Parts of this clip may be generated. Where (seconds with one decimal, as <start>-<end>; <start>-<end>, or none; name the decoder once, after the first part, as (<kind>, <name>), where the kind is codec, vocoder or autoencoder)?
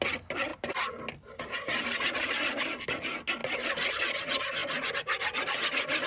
none